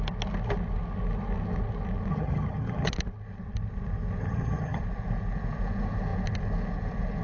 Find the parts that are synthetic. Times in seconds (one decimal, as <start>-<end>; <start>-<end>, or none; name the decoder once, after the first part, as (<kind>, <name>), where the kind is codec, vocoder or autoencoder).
2.1-2.9 (vocoder, HiFi-GAN); 4.2-4.8